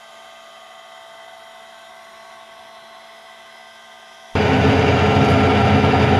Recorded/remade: recorded